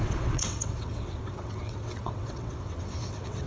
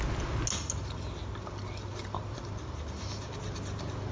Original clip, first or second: second